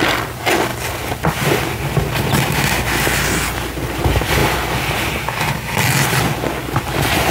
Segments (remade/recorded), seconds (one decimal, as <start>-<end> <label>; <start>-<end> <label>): 0.0-0.7 recorded; 0.7-2.5 remade; 2.5-7.3 recorded